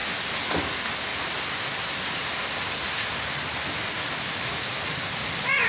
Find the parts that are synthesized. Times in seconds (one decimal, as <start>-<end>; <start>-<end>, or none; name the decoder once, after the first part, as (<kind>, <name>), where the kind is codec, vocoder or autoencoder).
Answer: none